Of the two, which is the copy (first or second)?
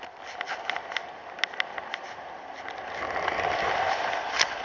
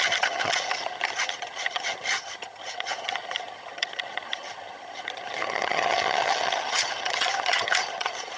second